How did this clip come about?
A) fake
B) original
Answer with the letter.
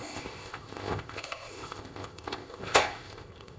A